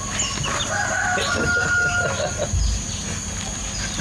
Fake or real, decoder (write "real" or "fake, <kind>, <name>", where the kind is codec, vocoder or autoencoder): real